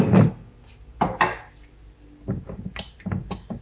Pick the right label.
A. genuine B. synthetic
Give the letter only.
A